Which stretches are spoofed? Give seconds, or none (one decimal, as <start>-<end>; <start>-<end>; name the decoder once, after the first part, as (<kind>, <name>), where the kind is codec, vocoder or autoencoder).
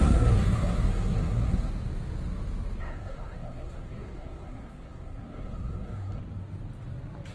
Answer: 0.0-1.7 (codec, SNAC); 2.8-6.2